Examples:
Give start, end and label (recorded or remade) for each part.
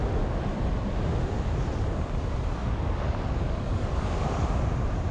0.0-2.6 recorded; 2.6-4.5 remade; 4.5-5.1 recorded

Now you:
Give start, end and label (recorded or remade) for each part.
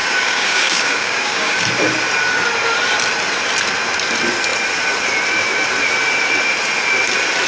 0.0-1.6 remade; 1.6-7.5 recorded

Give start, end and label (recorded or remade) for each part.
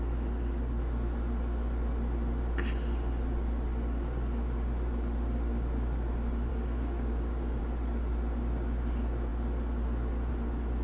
0.0-6.5 recorded; 6.5-7.6 remade; 7.6-10.8 recorded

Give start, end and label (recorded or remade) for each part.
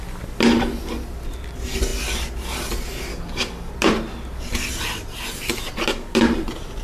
0.0-3.1 recorded; 3.1-3.7 remade; 3.7-6.8 recorded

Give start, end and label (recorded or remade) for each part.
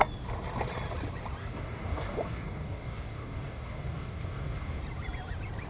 0.0-1.4 recorded; 1.4-4.8 remade; 4.8-5.7 recorded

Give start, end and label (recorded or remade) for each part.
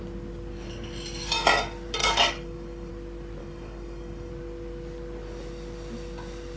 0.0-2.0 recorded; 2.0-2.9 remade; 2.9-3.4 recorded; 3.4-4.3 remade; 4.3-6.6 recorded